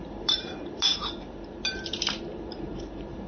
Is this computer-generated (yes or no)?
yes